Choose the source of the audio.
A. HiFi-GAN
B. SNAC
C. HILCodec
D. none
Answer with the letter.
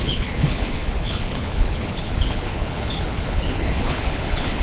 C